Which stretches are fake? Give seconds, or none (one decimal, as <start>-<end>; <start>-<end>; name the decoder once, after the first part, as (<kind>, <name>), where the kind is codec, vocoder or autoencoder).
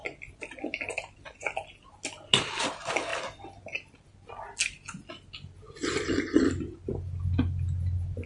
none